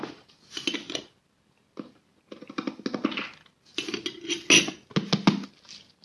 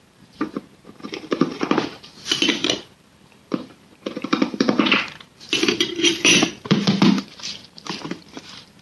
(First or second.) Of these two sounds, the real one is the first